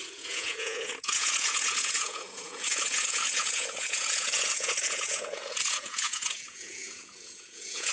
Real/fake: fake